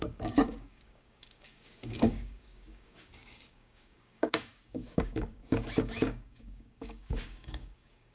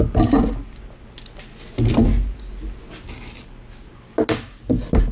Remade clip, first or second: first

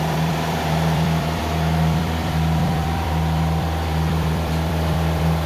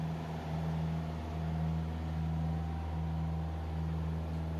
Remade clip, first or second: first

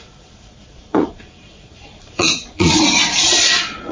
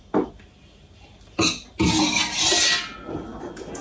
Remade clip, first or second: first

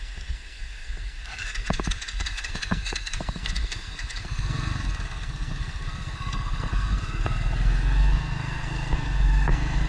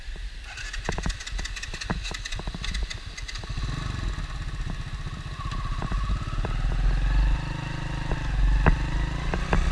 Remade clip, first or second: first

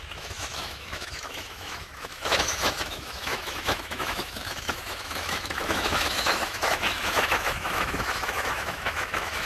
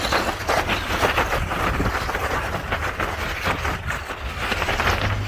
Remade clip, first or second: first